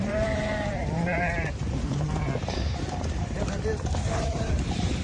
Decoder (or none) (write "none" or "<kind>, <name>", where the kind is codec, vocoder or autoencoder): vocoder, BigVGAN v2